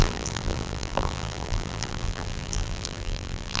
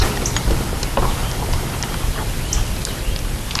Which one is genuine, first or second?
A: second